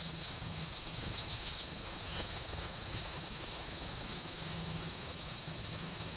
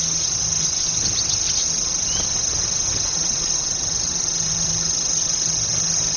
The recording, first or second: second